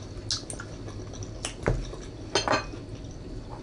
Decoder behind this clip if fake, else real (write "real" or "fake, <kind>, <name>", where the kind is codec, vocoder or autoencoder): real